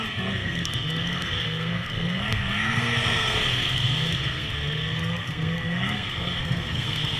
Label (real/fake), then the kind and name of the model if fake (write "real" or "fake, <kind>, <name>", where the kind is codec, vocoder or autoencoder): fake, codec, SNAC